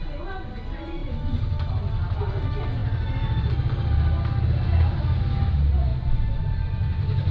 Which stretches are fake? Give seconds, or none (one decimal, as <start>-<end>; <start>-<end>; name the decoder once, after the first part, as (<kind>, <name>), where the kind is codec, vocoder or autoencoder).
none